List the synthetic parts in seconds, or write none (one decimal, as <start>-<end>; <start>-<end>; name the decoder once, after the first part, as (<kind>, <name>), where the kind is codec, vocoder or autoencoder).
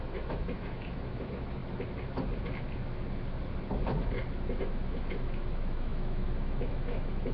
0.0-1.6 (autoencoder, DAC-VAE); 4.6-7.3